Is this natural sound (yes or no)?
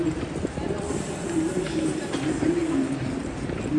yes